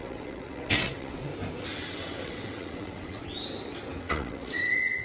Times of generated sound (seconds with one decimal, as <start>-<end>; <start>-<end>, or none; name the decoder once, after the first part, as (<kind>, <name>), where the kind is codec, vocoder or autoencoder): 0.0-1.3 (vocoder, WaveNeXt); 1.8-3.2; 4.0-5.0